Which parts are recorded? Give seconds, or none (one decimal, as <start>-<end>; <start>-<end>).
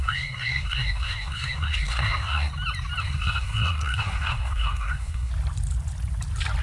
2.5-3.0; 5.3-6.6